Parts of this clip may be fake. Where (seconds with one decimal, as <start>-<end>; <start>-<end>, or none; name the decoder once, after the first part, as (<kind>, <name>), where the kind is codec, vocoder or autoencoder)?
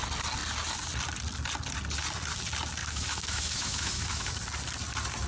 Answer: 2.8-4.3 (autoencoder, DAC-VAE)